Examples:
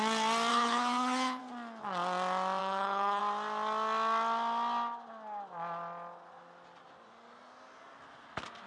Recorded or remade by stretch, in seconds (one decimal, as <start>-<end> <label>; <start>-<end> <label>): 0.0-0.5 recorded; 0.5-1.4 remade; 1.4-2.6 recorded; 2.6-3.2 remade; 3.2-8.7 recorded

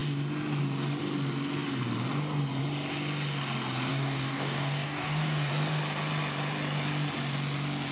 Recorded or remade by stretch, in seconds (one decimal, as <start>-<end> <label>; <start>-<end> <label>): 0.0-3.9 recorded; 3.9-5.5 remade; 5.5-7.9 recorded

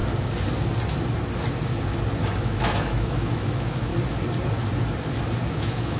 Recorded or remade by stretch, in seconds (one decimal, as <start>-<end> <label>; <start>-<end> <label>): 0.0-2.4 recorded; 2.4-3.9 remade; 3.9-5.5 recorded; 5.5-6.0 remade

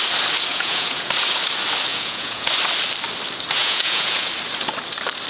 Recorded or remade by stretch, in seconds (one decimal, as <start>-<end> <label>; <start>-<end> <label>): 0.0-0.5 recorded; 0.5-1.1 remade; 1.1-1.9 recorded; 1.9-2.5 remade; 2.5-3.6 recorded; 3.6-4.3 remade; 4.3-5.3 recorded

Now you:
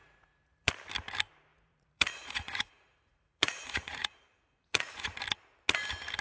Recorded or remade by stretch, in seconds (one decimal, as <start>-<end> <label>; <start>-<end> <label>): 0.0-0.7 remade; 0.7-1.5 recorded; 1.5-5.2 remade; 5.2-6.2 recorded

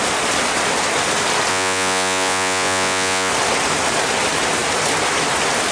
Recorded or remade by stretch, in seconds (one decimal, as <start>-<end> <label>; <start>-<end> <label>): 0.0-1.5 recorded; 1.5-3.3 remade; 3.3-5.7 recorded

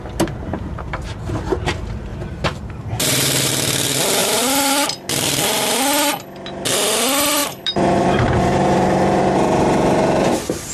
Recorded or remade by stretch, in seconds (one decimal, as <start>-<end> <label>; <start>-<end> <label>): 0.0-2.1 recorded; 2.1-3.5 remade; 3.5-4.2 recorded; 4.2-4.7 remade; 4.7-7.4 recorded; 7.4-10.7 remade